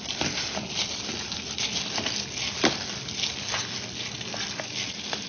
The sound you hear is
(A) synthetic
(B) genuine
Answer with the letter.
B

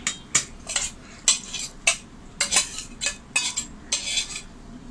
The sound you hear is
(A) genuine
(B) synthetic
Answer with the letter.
A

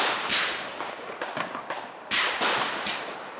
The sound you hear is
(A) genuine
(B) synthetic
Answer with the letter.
A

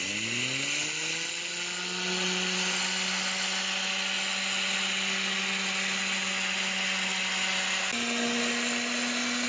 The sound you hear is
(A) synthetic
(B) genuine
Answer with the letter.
B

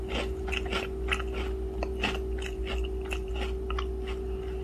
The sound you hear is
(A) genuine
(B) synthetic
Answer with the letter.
A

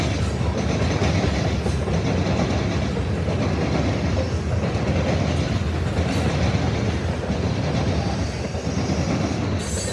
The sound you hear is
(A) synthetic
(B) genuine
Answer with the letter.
B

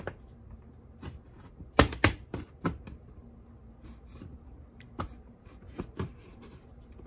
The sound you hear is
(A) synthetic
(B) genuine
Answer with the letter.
A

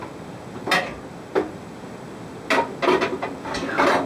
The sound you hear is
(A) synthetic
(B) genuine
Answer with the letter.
B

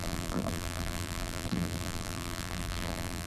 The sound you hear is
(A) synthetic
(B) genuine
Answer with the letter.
A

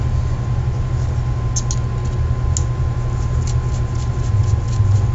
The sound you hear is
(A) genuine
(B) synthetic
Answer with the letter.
A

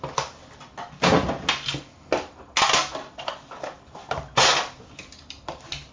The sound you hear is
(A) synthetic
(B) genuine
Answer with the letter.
B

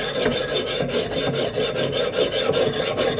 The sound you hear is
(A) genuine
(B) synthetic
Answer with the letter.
A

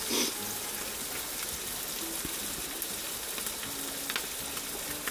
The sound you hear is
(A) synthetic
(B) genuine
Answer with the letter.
B